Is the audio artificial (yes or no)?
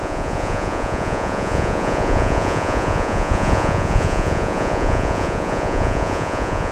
yes